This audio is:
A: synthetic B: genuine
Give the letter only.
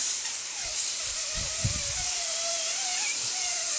A